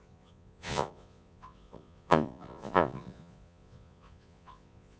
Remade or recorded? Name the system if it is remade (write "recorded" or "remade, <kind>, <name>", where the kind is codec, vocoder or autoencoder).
remade, vocoder, Vocos